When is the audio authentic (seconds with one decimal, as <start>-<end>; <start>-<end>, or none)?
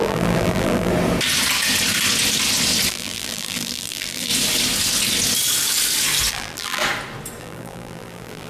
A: 0.9-2.9; 4.3-6.3; 6.8-7.4